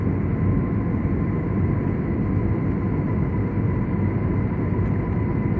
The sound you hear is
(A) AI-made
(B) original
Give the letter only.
B